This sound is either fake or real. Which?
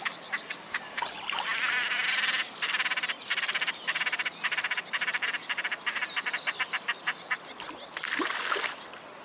real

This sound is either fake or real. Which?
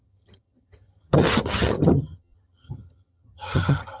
fake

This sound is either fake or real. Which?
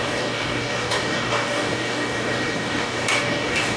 fake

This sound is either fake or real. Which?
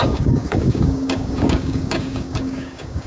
fake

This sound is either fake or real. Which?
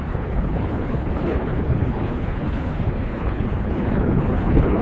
fake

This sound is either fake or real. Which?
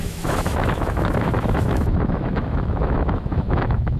fake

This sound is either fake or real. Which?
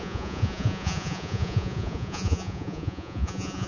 fake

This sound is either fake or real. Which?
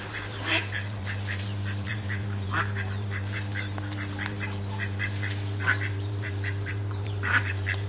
fake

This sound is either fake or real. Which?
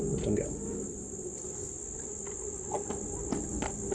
real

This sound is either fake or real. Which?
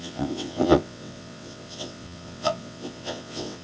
fake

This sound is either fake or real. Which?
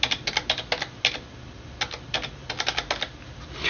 real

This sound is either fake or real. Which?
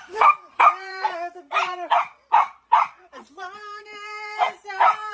fake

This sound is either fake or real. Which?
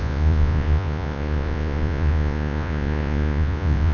fake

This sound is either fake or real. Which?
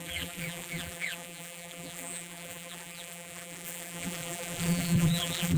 fake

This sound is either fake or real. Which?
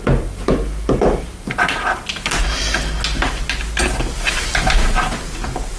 real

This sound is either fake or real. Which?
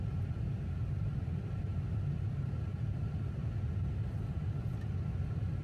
real